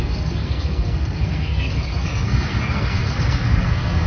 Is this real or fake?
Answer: fake